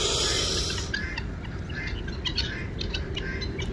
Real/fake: real